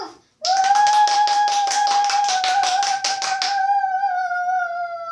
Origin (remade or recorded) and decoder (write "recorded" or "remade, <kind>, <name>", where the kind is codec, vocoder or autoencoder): recorded